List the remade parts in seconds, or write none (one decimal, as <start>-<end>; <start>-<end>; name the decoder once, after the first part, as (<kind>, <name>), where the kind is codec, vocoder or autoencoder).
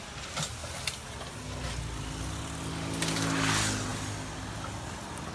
none